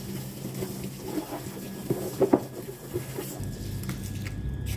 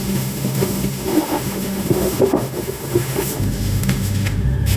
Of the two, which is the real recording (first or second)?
first